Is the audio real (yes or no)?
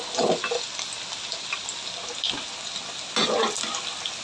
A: yes